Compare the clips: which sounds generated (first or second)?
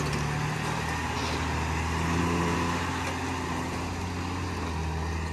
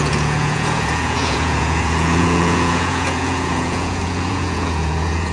second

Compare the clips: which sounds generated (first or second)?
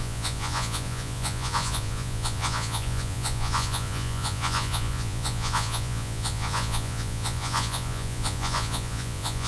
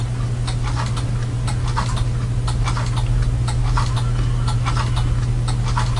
first